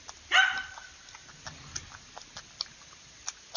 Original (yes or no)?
yes